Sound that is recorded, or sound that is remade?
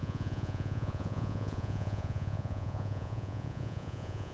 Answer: remade